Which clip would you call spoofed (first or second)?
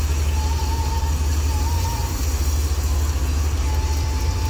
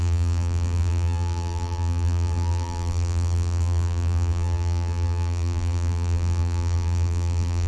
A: second